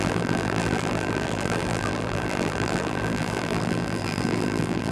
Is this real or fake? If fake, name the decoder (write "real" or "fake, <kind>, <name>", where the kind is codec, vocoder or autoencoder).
fake, vocoder, BigVGAN v2